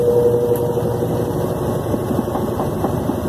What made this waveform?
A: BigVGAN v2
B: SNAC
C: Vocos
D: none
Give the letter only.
D